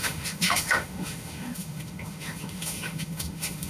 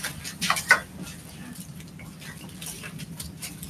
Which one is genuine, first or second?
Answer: second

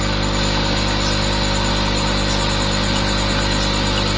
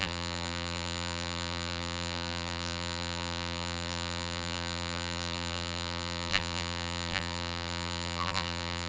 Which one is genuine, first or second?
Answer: first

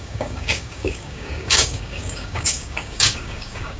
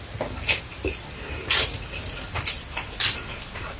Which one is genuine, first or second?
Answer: second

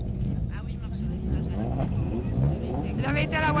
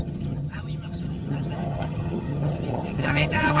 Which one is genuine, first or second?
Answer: first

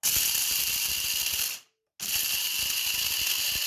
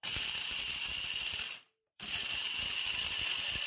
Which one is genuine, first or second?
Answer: first